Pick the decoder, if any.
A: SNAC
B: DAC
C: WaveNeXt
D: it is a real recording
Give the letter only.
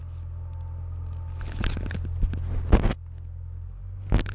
D